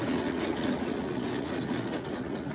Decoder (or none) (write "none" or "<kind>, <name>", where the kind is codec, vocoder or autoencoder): vocoder, Vocos